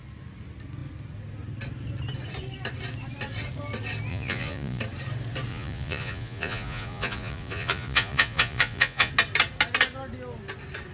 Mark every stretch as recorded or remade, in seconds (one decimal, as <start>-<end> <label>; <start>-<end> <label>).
0.0-4.1 recorded; 4.1-4.8 remade; 4.8-5.5 recorded; 5.5-9.1 remade; 9.1-10.9 recorded